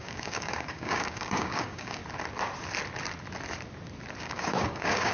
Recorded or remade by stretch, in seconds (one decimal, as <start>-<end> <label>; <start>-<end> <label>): 0.0-2.0 remade; 2.0-4.2 recorded; 4.2-5.1 remade